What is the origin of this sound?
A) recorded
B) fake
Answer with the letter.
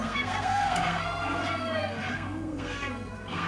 B